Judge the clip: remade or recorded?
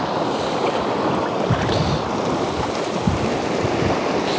recorded